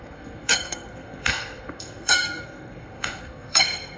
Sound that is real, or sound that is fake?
fake